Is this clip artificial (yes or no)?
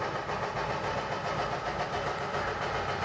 no